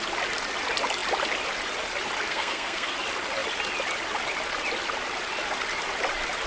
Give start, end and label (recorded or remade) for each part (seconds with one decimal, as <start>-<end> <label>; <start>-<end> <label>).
0.0-2.3 recorded; 2.3-2.9 remade; 2.9-6.5 recorded